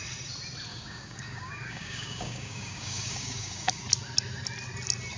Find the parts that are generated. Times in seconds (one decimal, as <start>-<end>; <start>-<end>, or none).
0.7-3.8